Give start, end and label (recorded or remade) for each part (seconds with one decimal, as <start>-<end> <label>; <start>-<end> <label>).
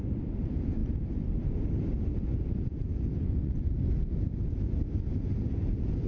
0.0-3.2 recorded; 3.2-3.7 remade; 3.7-6.1 recorded